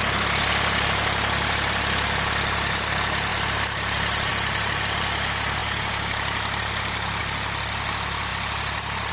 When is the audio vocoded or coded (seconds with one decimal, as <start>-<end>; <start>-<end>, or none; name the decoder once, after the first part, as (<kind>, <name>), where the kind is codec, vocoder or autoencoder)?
3.3-4.3 (vocoder, BigVGAN v2); 5.6-7.2